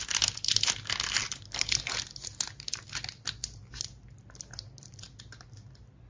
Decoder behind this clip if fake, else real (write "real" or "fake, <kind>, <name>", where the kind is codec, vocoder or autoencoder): real